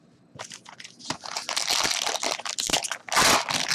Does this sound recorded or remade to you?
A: recorded